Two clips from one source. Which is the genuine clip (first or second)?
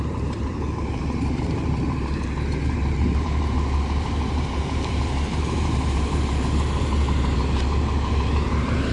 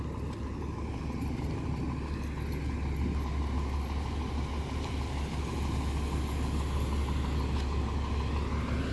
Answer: second